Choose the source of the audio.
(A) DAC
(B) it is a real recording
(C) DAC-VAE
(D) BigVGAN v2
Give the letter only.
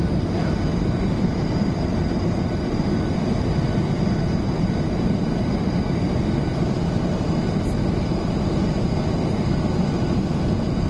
D